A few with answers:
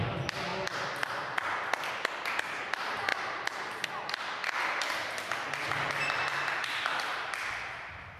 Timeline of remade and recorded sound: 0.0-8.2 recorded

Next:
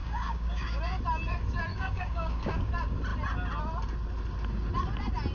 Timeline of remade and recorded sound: 0.0-0.8 remade; 0.8-1.7 recorded; 1.7-2.7 remade; 2.7-5.3 recorded

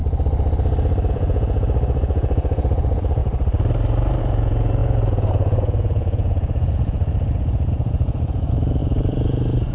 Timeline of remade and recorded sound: 0.0-1.1 recorded; 1.1-3.2 remade; 3.2-4.2 recorded; 4.2-9.7 remade

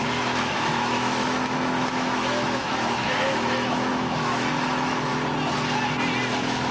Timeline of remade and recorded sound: 0.0-5.1 remade; 5.1-6.3 recorded; 6.3-6.7 remade

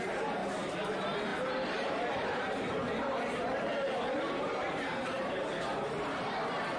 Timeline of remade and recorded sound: 0.0-0.4 remade; 0.4-0.9 recorded; 0.9-3.7 remade; 3.7-4.3 recorded; 4.3-5.7 remade; 5.7-6.8 recorded

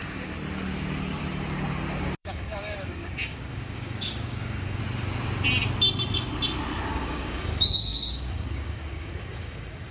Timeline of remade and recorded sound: 0.0-2.2 recorded; 2.2-4.8 remade; 4.8-6.9 recorded; 6.9-9.9 remade

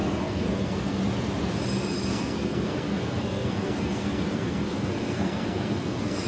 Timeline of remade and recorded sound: 0.0-1.0 remade; 1.0-2.1 recorded; 2.1-6.3 remade

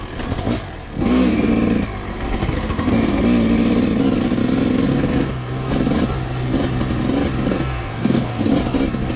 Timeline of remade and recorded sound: 0.0-0.8 recorded; 0.8-1.5 remade; 1.5-2.1 recorded; 2.1-3.2 remade; 3.2-4.9 recorded; 4.9-5.7 remade; 5.7-7.5 recorded; 7.5-8.5 remade; 8.5-9.2 recorded